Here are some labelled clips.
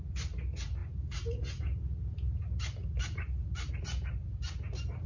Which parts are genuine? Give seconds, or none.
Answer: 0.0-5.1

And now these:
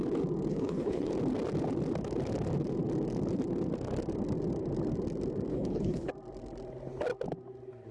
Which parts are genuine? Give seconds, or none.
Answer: 0.0-0.5; 1.1-5.5; 6.1-7.9

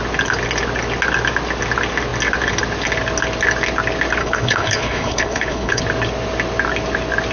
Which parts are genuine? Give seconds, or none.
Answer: 0.0-4.2; 5.8-7.3

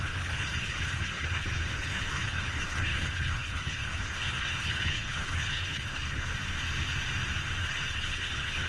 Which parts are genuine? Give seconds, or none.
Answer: 6.3-7.6

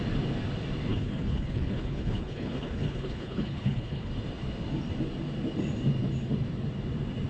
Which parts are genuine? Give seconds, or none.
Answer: 0.0-0.9; 4.1-7.3